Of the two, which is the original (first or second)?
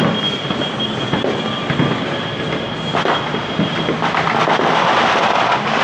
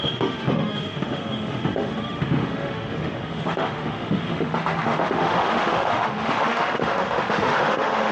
first